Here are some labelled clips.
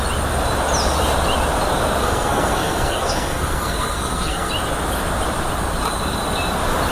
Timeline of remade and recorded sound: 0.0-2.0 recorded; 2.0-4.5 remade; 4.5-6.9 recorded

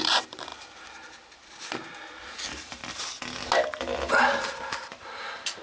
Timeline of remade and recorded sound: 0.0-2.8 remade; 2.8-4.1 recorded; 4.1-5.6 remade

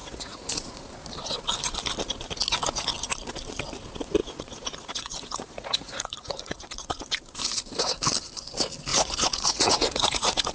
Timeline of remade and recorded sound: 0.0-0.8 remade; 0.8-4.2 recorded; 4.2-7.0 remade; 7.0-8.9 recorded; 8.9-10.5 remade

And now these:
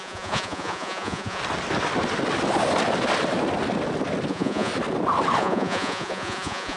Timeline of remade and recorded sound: 0.0-1.4 remade; 1.4-4.3 recorded; 4.3-4.7 remade; 4.7-5.4 recorded; 5.4-6.8 remade

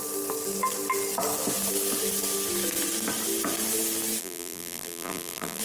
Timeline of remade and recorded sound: 0.0-4.2 recorded; 4.2-5.6 remade